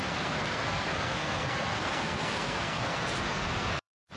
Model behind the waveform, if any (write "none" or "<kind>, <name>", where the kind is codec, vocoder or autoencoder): codec, SNAC